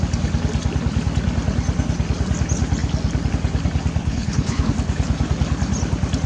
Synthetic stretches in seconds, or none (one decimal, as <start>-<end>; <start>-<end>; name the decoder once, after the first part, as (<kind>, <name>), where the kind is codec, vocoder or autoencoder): 4.0-4.7 (codec, HILCodec)